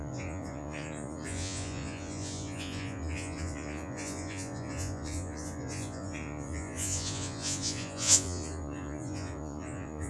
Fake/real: fake